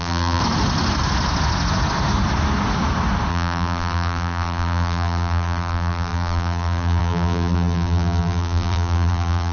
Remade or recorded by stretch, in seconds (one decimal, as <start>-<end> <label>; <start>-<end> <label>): 0.0-0.4 remade; 0.4-3.3 recorded; 3.3-9.5 remade